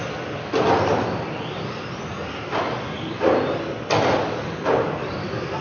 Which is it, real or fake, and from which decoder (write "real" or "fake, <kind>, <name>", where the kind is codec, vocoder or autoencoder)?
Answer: real